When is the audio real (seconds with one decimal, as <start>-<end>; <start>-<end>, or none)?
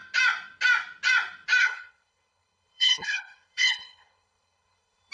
0.0-1.6